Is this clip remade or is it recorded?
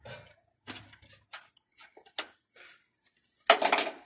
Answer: recorded